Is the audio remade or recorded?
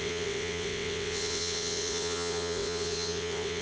remade